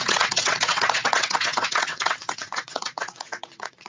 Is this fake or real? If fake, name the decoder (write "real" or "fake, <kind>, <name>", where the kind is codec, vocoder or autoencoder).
fake, vocoder, WaveNeXt